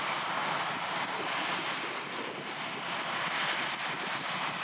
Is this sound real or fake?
fake